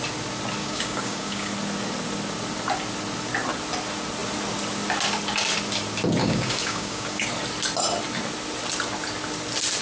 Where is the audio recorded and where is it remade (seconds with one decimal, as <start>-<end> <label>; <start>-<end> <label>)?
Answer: 0.0-0.6 recorded; 0.6-1.5 remade; 1.5-6.2 recorded; 6.2-7.3 remade; 7.3-9.8 recorded